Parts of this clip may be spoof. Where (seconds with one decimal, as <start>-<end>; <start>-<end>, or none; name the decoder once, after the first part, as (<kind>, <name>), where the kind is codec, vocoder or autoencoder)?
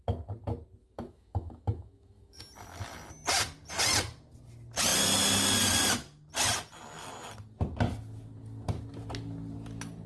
0.8-2.4 (autoencoder, DAC-VAE)